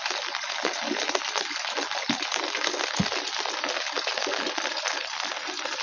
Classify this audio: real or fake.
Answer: real